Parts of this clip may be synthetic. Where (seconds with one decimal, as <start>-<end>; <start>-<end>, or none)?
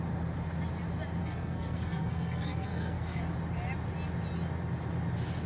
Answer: 1.2-3.2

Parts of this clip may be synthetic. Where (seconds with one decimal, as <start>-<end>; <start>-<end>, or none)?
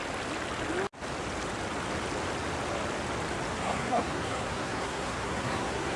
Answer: 3.6-6.0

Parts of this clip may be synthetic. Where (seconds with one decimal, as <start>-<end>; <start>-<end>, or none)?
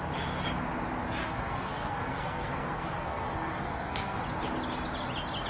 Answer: 1.2-4.2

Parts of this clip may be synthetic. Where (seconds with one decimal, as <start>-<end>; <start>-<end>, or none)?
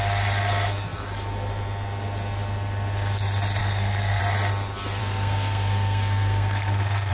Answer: 3.6-4.2; 5.0-7.1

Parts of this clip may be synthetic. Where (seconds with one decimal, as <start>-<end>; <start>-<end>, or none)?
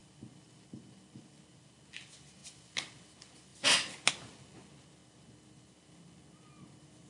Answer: none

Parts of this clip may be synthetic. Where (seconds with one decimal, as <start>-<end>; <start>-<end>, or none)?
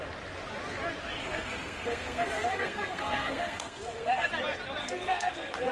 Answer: 1.2-4.3; 4.8-5.7